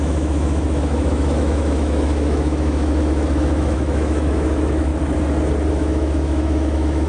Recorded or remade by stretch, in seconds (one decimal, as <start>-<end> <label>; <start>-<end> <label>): 0.0-4.9 remade; 4.9-5.7 recorded; 5.7-7.1 remade